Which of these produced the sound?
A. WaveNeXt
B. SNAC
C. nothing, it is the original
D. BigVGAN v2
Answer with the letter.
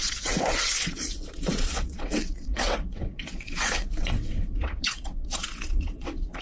A